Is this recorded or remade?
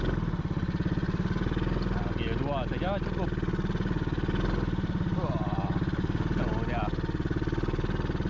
recorded